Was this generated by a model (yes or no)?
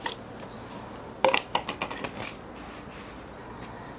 no